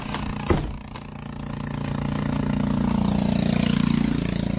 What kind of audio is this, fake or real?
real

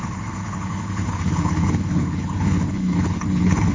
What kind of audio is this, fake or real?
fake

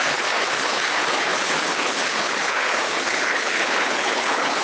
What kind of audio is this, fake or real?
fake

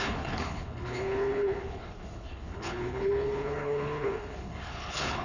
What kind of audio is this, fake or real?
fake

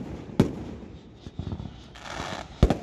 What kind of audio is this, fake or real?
real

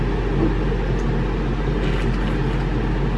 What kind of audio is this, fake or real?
real